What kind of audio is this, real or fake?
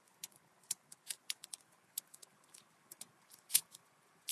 fake